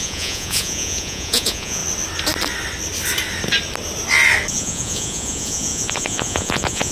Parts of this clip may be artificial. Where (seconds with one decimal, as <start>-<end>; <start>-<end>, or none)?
0.0-1.8; 4.5-6.9

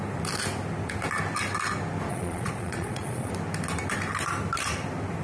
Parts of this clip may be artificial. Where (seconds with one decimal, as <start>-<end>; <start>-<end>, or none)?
2.1-3.3